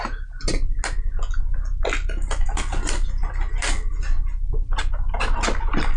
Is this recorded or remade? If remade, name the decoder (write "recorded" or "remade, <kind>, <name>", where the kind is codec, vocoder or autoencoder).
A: recorded